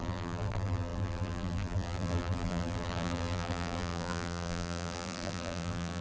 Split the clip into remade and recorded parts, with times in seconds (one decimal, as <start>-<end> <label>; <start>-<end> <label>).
0.0-6.0 remade

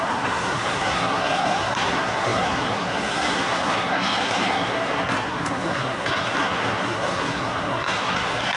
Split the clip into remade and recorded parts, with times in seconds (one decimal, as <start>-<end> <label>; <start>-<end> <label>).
0.0-8.6 remade